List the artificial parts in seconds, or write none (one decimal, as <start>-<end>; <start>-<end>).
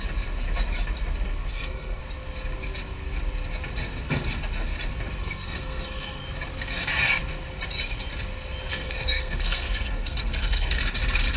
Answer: 1.5-2.0; 5.2-6.2; 8.7-10.8